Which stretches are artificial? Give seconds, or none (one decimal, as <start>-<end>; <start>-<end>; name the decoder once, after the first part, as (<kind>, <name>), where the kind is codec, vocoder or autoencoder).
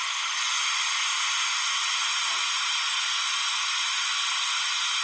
none